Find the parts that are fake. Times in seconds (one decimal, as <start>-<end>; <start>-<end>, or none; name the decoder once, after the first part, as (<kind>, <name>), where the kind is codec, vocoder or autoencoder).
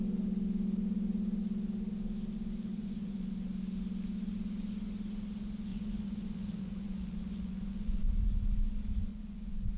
2.7-3.3 (vocoder, Vocos); 5.7-8.1; 9.1-9.8